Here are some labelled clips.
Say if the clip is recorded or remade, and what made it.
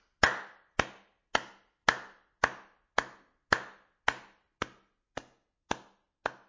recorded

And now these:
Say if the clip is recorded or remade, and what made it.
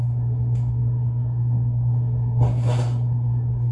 remade, codec, SNAC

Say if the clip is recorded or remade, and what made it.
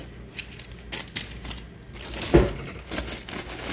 recorded